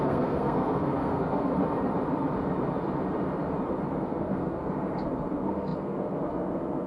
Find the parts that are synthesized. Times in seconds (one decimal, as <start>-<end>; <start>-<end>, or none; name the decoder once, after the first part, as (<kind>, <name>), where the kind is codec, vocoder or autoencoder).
0.0-1.5 (codec, SNAC); 4.0-6.9

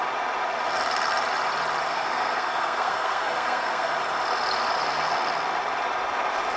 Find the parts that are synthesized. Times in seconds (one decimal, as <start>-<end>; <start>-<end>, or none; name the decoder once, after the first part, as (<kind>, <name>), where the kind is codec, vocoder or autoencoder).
1.9-3.9 (codec, SNAC)

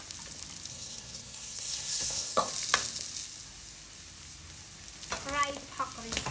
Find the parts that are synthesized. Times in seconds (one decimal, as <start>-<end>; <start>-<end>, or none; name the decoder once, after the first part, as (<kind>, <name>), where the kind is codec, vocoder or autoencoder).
0.7-2.5 (codec, SNAC)